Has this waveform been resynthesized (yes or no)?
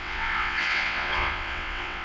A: yes